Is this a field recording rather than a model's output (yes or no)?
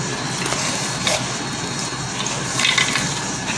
yes